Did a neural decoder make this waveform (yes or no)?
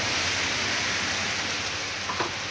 no